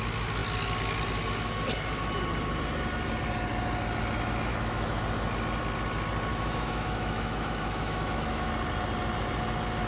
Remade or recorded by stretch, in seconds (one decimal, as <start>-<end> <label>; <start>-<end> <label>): 0.0-4.5 recorded; 4.5-5.0 remade; 5.0-6.3 recorded; 6.3-8.5 remade; 8.5-9.9 recorded